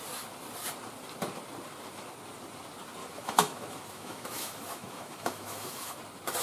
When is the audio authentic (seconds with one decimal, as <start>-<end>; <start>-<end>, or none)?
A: 0.0-3.0; 6.0-6.4